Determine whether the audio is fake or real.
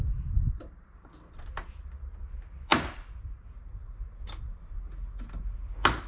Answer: real